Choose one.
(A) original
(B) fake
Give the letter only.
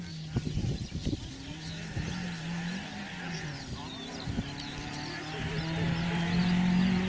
A